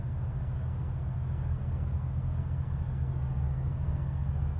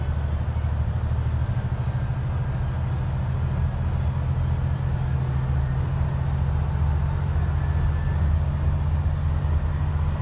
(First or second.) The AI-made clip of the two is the first